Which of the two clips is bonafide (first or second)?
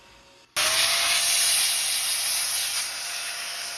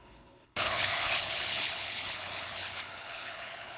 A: first